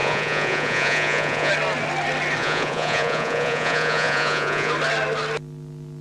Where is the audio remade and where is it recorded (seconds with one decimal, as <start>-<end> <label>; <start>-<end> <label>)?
0.0-1.5 remade; 1.5-2.4 recorded; 2.4-4.7 remade; 4.7-6.0 recorded